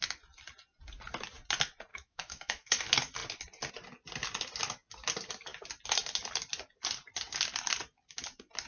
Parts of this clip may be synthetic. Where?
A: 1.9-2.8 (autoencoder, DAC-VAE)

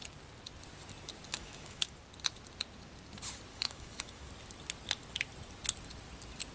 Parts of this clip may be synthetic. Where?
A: 1.3-2.0 (autoencoder, DAC-VAE); 3.5-4.3